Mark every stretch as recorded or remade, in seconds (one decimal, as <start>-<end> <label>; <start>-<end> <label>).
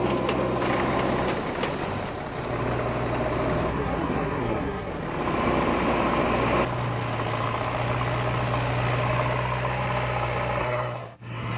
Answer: 0.0-3.7 recorded; 3.7-4.9 remade; 4.9-10.6 recorded; 10.6-11.6 remade